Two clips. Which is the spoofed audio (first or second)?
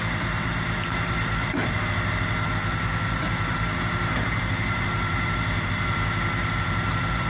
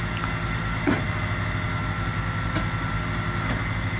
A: first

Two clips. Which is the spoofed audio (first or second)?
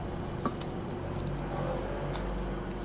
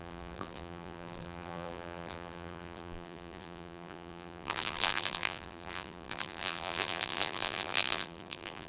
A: second